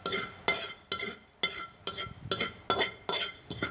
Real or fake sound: real